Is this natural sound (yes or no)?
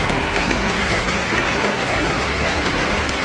no